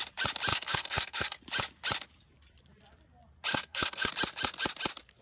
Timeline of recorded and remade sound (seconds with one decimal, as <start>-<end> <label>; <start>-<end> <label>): 0.0-0.5 recorded; 0.5-1.4 remade; 1.4-3.5 recorded; 3.5-4.1 remade; 4.1-5.2 recorded